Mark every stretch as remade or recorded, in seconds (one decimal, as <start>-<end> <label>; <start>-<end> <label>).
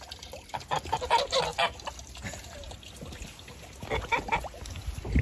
0.0-1.5 remade; 1.5-4.6 recorded; 4.6-5.2 remade